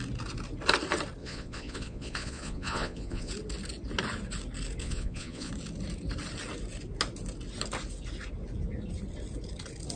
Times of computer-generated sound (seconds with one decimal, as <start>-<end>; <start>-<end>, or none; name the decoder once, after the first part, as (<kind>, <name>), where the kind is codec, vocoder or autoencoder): 1.2-3.3 (vocoder, Vocos); 4.8-5.5